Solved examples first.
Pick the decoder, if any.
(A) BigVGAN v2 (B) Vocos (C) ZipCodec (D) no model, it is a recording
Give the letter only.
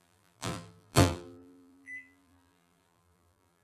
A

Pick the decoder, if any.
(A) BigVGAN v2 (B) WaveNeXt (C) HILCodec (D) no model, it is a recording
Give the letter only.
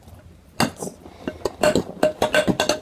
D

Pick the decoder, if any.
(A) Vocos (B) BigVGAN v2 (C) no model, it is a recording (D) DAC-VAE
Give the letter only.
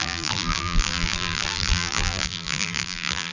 B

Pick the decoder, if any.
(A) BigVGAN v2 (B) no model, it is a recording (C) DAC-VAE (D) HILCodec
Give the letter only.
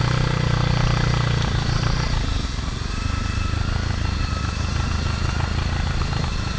B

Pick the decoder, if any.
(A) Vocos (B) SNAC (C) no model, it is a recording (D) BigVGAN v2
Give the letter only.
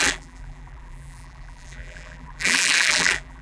D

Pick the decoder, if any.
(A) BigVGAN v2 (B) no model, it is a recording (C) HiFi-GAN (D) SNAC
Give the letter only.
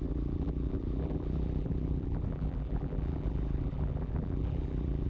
A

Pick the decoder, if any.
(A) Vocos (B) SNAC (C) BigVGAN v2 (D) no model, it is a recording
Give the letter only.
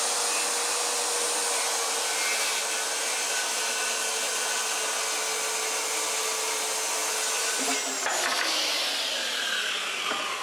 D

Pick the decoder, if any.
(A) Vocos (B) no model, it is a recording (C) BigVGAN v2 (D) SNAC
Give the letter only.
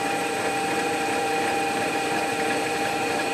C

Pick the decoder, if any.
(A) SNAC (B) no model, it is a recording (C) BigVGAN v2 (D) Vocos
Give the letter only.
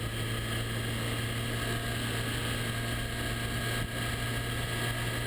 B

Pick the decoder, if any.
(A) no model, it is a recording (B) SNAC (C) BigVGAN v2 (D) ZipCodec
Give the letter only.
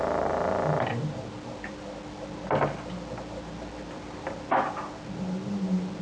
A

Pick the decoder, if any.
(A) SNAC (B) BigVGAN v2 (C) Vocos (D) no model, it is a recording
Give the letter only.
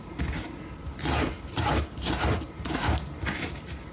B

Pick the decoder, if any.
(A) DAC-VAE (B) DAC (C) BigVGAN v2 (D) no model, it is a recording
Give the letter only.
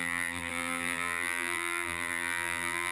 C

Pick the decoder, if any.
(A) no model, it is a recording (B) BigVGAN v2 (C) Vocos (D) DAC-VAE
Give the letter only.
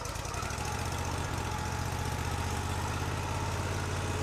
A